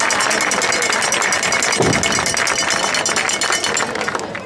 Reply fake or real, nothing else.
real